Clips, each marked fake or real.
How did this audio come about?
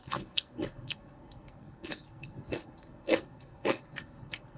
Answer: fake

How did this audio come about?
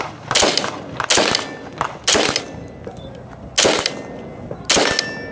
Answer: real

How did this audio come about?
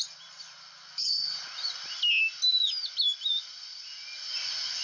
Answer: real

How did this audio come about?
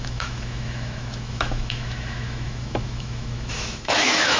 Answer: fake